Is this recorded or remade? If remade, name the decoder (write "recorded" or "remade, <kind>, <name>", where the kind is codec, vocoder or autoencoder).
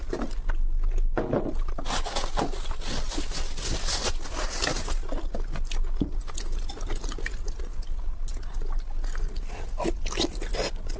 recorded